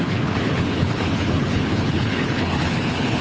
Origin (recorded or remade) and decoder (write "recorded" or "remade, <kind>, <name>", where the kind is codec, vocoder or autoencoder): remade, codec, HILCodec